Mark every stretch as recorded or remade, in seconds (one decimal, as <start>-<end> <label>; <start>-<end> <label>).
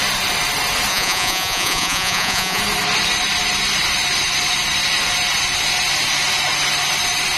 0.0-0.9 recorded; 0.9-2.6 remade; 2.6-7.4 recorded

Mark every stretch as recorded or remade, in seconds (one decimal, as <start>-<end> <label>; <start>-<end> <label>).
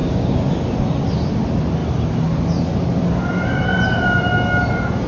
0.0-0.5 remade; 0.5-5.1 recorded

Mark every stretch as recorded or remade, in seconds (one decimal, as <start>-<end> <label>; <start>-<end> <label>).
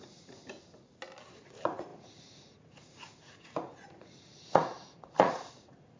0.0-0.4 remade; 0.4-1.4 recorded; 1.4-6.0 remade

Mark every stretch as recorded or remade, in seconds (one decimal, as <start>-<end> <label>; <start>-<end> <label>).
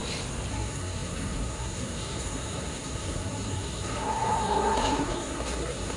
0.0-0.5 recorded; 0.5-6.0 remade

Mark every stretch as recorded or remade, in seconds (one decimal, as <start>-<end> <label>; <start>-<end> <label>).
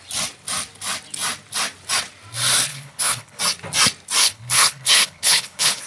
0.0-2.7 recorded; 2.7-3.4 remade; 3.4-4.2 recorded; 4.2-5.9 remade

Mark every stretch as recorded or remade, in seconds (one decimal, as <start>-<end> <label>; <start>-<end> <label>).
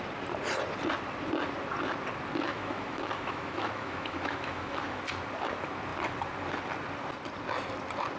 0.0-2.5 recorded; 2.5-5.0 remade; 5.0-8.2 recorded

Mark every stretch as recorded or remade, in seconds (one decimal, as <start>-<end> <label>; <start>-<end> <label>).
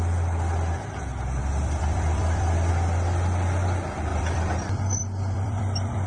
0.0-1.4 recorded; 1.4-2.7 remade; 2.7-4.1 recorded; 4.1-6.1 remade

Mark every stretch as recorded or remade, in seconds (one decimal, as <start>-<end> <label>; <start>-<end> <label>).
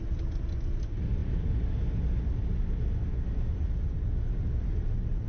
0.0-5.3 recorded